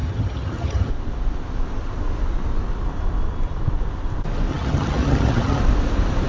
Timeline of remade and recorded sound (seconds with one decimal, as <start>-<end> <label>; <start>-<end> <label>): 0.0-0.9 remade; 0.9-4.5 recorded; 4.5-5.6 remade; 5.6-6.3 recorded